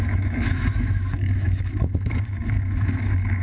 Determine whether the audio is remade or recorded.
remade